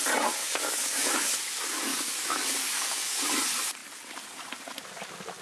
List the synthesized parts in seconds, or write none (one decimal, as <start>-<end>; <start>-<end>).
0.4-1.1; 1.9-3.2